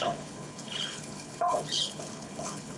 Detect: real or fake fake